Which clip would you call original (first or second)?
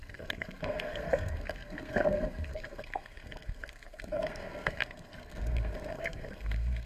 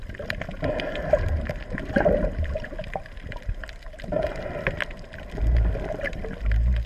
second